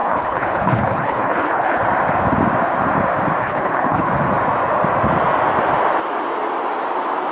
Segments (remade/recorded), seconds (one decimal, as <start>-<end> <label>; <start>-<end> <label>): 0.0-1.8 remade; 1.8-3.4 recorded; 3.4-4.1 remade; 4.1-7.3 recorded